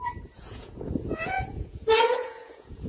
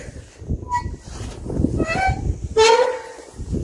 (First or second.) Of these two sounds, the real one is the second